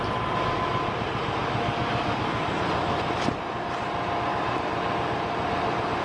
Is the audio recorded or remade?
recorded